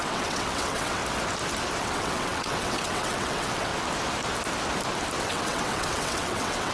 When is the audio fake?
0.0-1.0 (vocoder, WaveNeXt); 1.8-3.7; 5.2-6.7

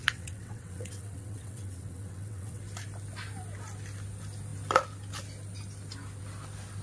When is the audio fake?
0.0-2.6 (vocoder, WaveNeXt)